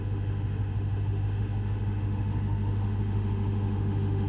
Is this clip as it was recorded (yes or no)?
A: no